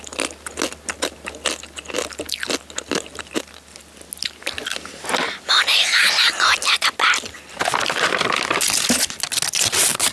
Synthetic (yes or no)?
no